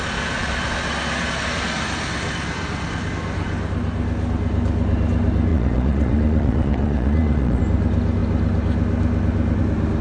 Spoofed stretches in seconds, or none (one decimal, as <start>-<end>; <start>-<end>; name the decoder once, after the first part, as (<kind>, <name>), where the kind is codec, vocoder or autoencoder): 5.5-7.6 (vocoder, Vocos)